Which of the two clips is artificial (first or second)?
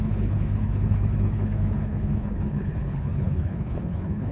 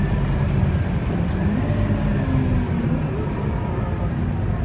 first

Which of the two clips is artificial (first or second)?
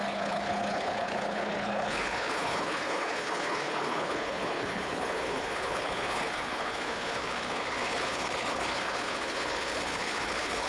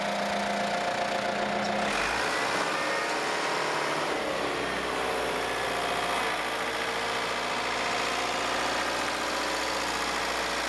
first